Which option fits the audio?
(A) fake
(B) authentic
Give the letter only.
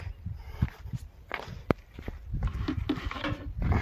B